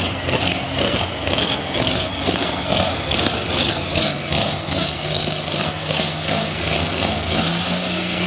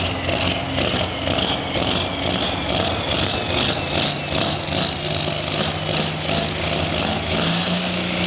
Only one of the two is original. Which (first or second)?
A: second